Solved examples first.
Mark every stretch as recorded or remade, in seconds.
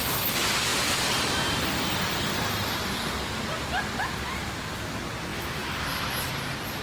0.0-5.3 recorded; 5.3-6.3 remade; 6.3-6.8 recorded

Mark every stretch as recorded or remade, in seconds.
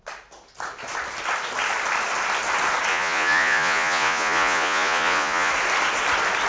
0.0-2.9 recorded; 2.9-5.5 remade; 5.5-6.5 recorded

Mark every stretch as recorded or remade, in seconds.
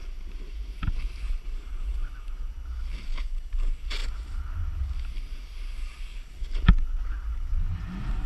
0.0-8.3 recorded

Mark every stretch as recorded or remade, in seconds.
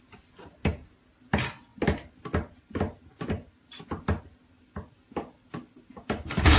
0.0-1.7 remade; 1.7-4.5 recorded; 4.5-6.6 remade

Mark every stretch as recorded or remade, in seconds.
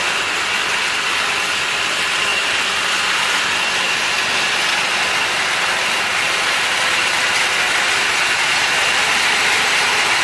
0.0-10.2 recorded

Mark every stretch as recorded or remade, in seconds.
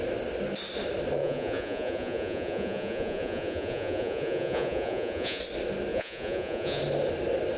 0.0-1.2 recorded; 1.2-5.4 remade; 5.4-5.9 recorded; 5.9-6.8 remade; 6.8-7.6 recorded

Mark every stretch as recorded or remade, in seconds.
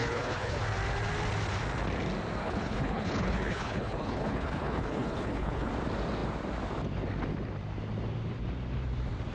0.0-0.6 remade; 0.6-2.4 recorded; 2.4-5.7 remade; 5.7-9.3 recorded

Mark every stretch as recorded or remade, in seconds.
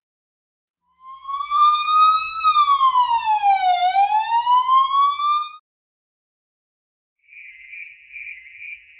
0.0-1.8 remade; 1.8-6.6 recorded; 6.6-9.0 remade